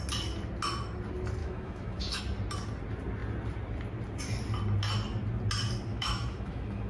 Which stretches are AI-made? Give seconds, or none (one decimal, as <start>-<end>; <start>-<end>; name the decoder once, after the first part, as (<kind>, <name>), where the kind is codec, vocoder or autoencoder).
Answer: 1.4-2.2 (autoencoder, DAC-VAE); 5.9-6.9